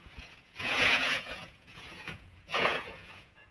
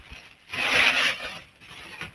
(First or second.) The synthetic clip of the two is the first